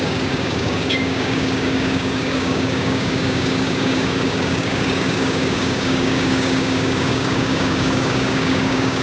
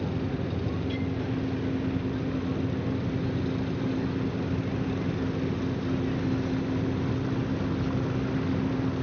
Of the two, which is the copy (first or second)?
first